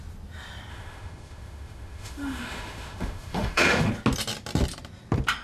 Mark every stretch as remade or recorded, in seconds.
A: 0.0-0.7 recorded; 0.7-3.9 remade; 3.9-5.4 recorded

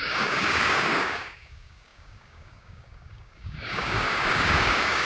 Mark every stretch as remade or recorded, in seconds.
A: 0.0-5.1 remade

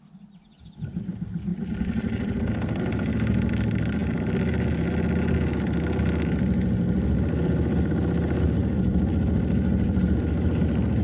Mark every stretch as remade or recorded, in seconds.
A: 0.0-8.6 recorded; 8.6-10.0 remade; 10.0-11.0 recorded

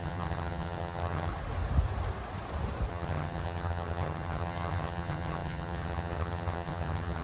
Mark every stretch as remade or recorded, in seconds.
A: 0.0-1.3 remade; 1.3-2.9 recorded; 2.9-7.2 remade

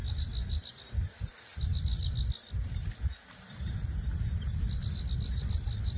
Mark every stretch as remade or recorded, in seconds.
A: 0.0-6.0 recorded

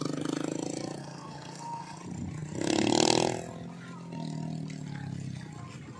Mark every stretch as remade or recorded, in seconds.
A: 0.0-1.0 recorded; 1.0-2.0 remade; 2.0-6.0 recorded